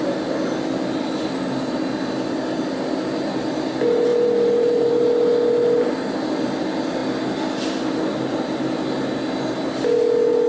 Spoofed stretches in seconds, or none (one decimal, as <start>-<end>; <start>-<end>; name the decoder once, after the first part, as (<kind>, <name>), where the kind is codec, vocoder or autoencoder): 4.1-4.9 (vocoder, BigVGAN v2)